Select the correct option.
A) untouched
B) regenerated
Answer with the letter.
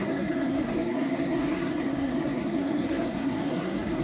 B